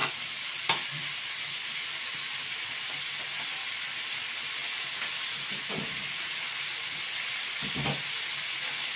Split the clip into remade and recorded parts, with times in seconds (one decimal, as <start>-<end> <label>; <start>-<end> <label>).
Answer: 0.0-0.6 remade; 0.6-9.0 recorded